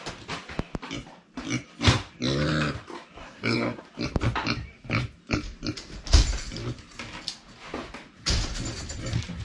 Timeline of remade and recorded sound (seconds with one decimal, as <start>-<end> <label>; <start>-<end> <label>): 0.0-3.2 recorded; 3.2-3.8 remade; 3.8-9.4 recorded